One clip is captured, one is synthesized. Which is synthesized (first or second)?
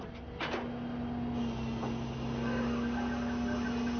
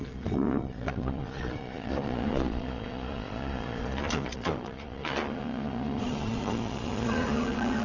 second